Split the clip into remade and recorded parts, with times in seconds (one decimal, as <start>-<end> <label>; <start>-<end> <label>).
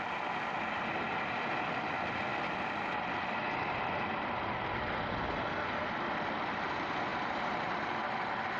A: 0.0-7.1 recorded; 7.1-7.8 remade; 7.8-8.6 recorded